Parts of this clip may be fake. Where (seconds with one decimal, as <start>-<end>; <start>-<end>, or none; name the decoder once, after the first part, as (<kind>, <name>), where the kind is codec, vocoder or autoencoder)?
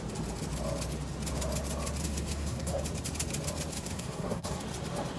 2.0-2.8 (codec, SNAC); 3.7-4.6